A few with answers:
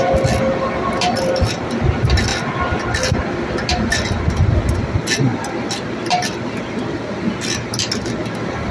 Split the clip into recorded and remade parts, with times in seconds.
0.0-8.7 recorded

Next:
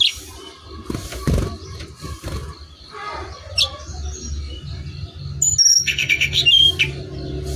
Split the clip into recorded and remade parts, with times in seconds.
0.0-5.7 recorded; 5.7-6.4 remade; 6.4-7.6 recorded

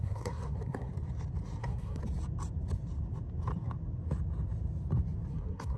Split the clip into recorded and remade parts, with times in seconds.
0.0-0.9 remade; 0.9-1.6 recorded; 1.6-2.0 remade; 2.0-5.3 recorded; 5.3-5.8 remade

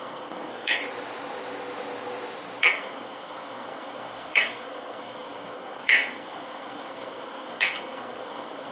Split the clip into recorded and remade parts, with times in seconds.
0.0-0.8 remade; 0.8-2.6 recorded; 2.6-8.7 remade